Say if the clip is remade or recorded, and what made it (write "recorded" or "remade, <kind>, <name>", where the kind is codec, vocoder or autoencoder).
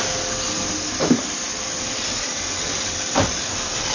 remade, vocoder, BigVGAN v2